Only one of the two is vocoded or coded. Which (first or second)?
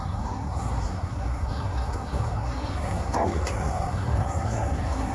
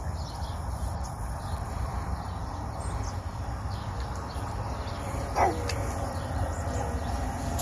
first